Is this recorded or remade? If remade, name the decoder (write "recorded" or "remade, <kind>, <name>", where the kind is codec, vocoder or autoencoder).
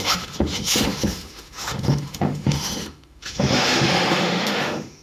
remade, autoencoder, DAC-VAE